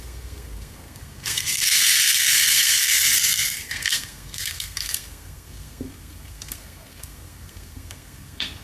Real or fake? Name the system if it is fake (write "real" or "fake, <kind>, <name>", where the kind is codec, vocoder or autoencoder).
fake, codec, SNAC